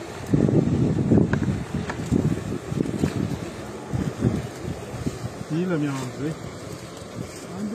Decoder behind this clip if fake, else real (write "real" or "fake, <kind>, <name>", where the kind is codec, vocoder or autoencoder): real